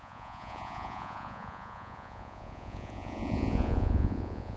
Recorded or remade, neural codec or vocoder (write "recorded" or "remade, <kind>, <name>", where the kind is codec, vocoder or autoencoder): remade, vocoder, Vocos